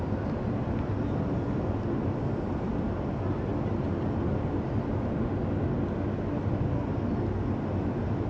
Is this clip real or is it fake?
real